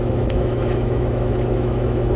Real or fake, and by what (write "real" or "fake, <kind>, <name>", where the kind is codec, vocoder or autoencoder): fake, autoencoder, DAC-VAE